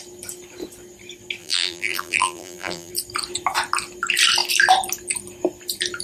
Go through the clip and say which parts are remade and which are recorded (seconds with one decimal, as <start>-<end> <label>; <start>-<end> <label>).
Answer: 0.0-1.4 recorded; 1.4-2.9 remade; 2.9-6.0 recorded